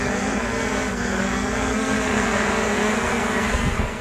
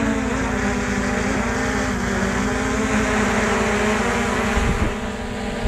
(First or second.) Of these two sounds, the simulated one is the first